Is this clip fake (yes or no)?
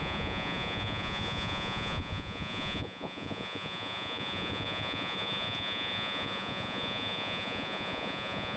yes